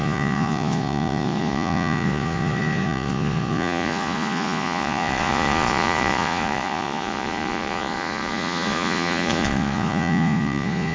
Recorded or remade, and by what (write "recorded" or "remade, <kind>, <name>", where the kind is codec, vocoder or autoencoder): remade, vocoder, Vocos